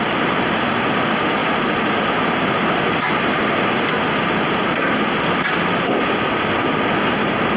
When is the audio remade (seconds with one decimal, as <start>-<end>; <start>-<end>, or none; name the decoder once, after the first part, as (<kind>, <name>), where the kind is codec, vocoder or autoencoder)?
none